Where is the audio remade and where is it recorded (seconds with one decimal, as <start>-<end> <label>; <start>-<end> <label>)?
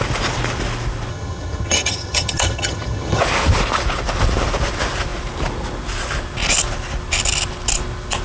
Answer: 0.0-1.1 recorded; 1.1-3.2 remade; 3.2-8.2 recorded